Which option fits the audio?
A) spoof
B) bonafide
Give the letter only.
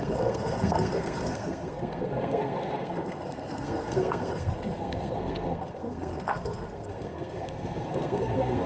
A